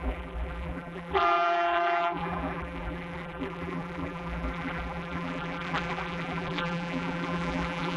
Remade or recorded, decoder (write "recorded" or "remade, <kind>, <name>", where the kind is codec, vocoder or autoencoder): remade, vocoder, BigVGAN v2